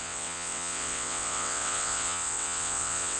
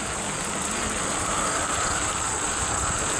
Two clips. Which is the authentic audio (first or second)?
second